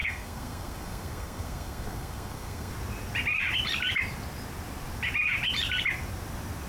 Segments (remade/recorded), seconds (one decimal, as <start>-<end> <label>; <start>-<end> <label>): 0.0-2.7 remade; 2.7-6.7 recorded